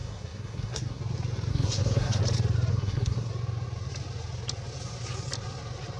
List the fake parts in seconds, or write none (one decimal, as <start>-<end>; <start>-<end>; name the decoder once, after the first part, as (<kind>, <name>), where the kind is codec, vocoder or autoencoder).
0.0-1.0 (codec, SNAC); 1.5-2.2; 2.7-3.3